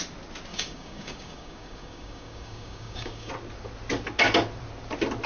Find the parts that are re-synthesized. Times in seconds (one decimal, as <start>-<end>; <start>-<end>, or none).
0.5-3.3